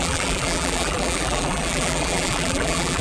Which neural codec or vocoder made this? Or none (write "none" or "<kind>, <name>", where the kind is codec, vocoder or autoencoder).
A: vocoder, BigVGAN v2